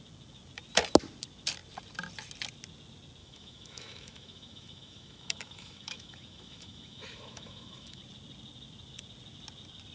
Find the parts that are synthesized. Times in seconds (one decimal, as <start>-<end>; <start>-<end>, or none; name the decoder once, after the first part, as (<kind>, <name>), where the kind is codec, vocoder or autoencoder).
3.2-8.0 (autoencoder, DAC-VAE)